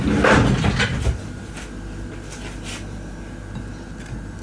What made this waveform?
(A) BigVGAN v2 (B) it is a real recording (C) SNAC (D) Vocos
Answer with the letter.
B